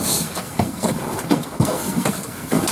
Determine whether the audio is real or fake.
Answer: fake